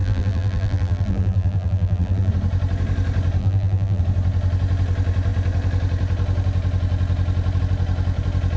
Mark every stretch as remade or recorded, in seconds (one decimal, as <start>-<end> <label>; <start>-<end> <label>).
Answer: 0.0-2.3 remade; 2.3-3.4 recorded; 3.4-4.0 remade; 4.0-8.6 recorded